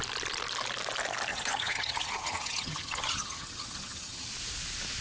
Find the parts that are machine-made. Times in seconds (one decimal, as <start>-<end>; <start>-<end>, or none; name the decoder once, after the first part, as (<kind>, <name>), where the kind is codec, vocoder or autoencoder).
1.3-4.3 (vocoder, HiFi-GAN)